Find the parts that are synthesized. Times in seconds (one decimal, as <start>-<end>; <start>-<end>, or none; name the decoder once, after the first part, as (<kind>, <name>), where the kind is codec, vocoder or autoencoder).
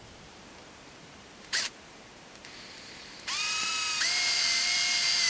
0.0-3.7 (vocoder, BigVGAN v2); 4.3-5.3